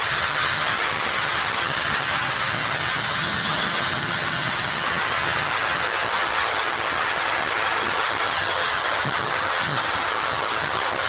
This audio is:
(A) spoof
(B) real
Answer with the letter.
A